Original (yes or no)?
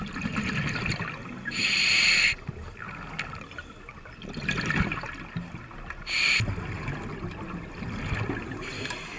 yes